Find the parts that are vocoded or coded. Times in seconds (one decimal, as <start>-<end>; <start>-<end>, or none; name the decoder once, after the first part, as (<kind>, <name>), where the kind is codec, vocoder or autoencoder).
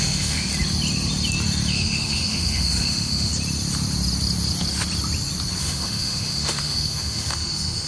0.0-0.5 (autoencoder, DAC-VAE); 1.7-3.3; 5.6-7.9